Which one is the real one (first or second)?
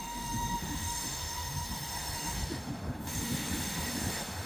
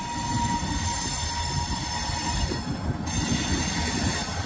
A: second